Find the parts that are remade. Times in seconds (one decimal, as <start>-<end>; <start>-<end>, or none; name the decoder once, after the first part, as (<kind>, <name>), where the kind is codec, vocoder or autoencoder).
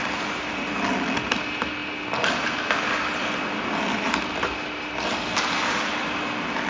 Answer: none